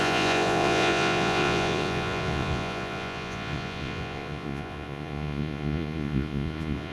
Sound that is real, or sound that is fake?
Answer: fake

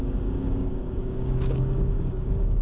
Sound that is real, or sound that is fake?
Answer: fake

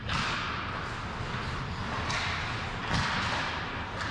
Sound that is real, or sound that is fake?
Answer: real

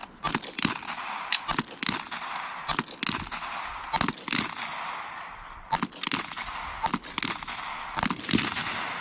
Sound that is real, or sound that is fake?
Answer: real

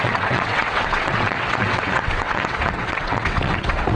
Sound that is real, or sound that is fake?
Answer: fake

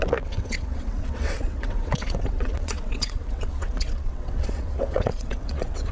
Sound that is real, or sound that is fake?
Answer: fake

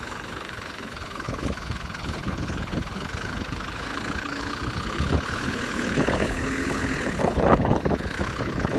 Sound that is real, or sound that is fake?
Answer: fake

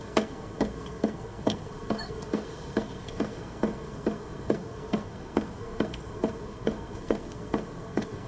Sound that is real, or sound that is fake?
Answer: fake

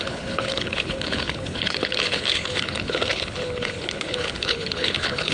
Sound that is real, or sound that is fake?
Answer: fake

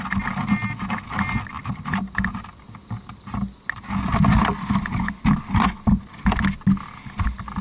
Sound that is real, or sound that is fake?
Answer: real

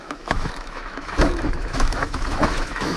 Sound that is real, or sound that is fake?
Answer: fake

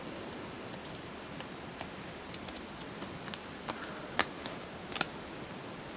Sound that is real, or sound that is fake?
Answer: real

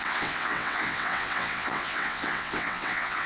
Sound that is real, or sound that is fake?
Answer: fake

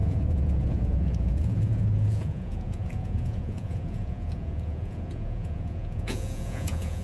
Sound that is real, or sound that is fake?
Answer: fake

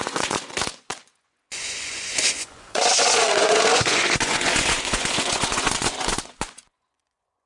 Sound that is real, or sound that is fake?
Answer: fake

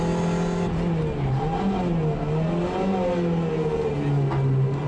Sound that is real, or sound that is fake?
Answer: real